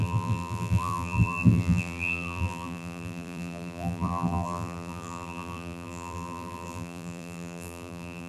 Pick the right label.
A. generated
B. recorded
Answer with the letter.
A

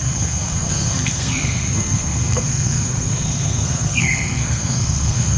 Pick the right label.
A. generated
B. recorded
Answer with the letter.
A